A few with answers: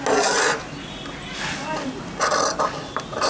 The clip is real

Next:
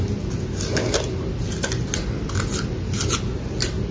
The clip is real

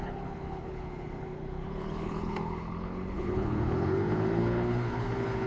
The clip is fake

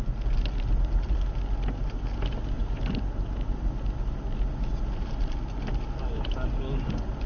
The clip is real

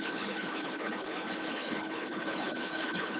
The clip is fake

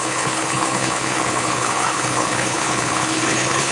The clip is fake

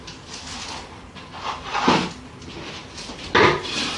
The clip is real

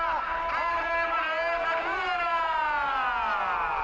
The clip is real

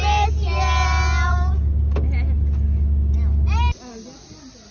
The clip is real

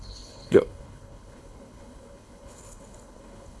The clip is fake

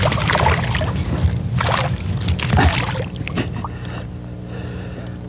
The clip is real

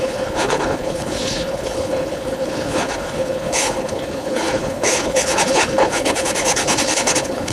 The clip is fake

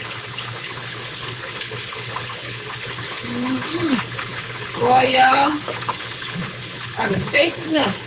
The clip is fake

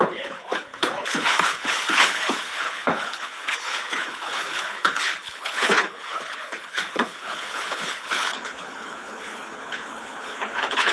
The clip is fake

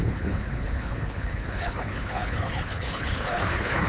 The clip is fake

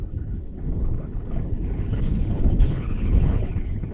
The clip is fake